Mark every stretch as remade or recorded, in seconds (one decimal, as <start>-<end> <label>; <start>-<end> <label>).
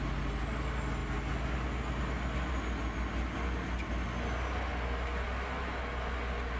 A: 0.0-6.6 recorded